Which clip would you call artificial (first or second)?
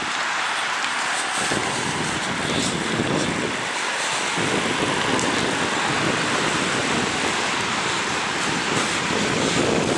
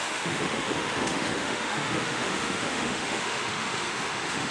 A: second